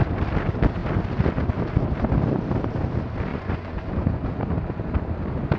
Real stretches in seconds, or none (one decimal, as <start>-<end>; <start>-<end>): 0.0-3.3; 4.4-5.6